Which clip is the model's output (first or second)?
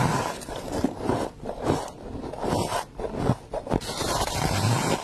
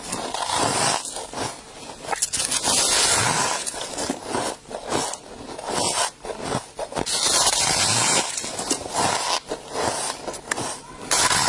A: first